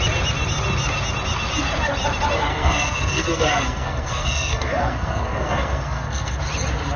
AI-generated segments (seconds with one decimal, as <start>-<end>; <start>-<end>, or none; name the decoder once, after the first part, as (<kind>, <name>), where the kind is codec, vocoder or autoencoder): 2.5-6.4 (codec, SNAC)